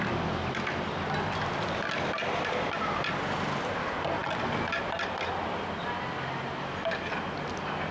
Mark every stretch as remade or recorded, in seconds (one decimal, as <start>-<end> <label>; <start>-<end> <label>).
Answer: 0.0-7.9 recorded